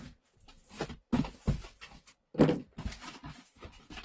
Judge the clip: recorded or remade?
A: recorded